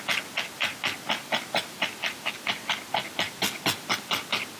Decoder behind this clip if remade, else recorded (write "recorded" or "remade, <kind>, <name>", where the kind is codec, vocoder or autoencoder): recorded